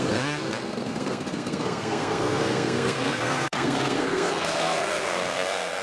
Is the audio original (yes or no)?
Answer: no